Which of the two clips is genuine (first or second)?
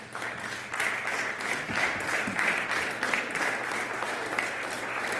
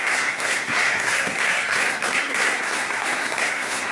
first